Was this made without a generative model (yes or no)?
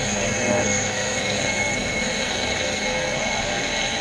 no